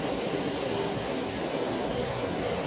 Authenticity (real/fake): fake